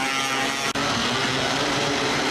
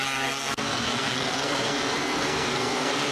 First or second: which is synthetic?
second